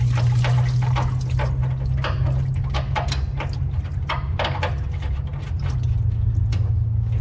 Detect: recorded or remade recorded